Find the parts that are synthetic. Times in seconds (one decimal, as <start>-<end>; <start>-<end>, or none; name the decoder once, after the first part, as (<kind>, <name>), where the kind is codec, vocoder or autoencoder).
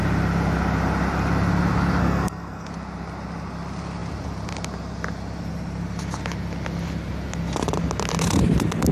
2.0-2.7 (codec, SNAC)